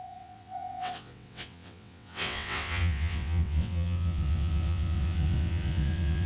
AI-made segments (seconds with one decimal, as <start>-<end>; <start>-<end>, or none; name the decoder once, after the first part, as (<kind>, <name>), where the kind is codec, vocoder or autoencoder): 0.0-6.3 (vocoder, WaveNeXt)